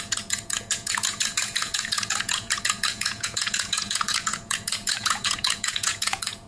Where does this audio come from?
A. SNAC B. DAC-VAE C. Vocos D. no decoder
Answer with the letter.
C